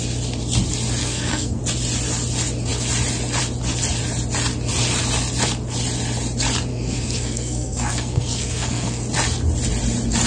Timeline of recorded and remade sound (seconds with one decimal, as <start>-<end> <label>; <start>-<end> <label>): 0.0-1.0 recorded; 1.0-1.6 remade; 1.6-6.7 recorded; 6.7-9.0 remade; 9.0-10.3 recorded